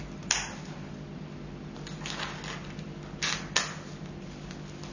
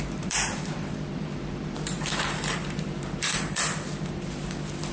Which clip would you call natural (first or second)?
first